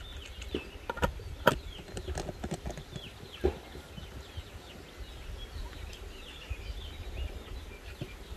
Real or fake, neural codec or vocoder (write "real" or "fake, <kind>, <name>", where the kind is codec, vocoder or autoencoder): real